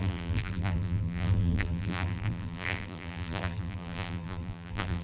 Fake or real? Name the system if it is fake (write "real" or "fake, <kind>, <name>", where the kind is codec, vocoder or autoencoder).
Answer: fake, vocoder, BigVGAN v2